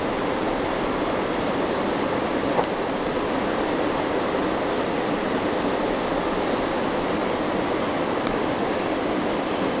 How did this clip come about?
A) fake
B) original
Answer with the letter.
B